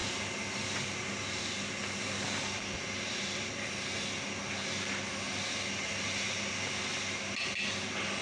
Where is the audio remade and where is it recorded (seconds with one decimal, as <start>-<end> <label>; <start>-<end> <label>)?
0.0-8.2 recorded